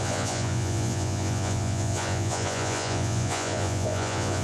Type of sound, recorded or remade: remade